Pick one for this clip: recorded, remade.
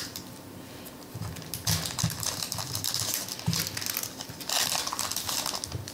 recorded